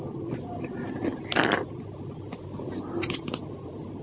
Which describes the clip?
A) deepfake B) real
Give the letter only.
B